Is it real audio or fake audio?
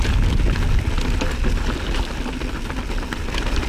real